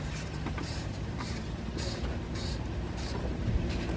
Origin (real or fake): fake